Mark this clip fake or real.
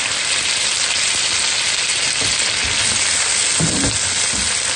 real